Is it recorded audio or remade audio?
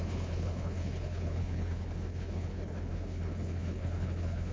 remade